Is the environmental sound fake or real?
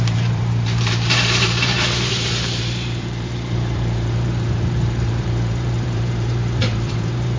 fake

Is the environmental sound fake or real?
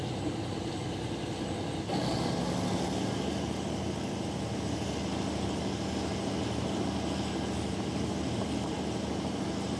real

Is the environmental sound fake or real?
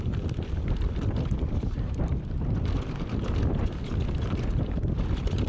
fake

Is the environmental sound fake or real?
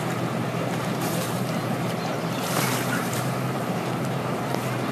fake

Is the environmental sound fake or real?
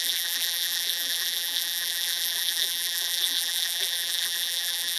fake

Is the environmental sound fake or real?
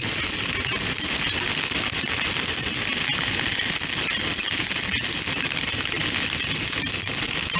real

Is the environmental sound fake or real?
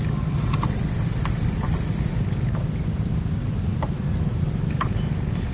real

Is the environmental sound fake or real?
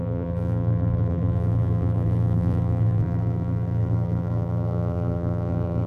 fake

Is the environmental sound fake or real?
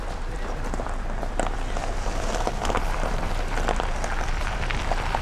fake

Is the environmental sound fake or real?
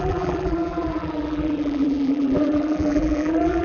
fake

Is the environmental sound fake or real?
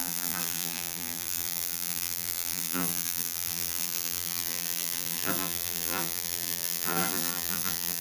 fake